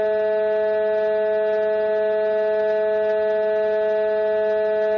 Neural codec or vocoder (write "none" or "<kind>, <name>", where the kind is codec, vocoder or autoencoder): none